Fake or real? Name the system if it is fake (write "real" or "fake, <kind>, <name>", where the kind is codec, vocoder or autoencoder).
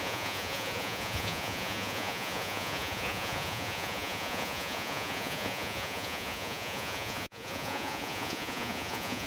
fake, vocoder, Vocos